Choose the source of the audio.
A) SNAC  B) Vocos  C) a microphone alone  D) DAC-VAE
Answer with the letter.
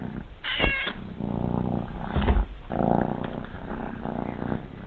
C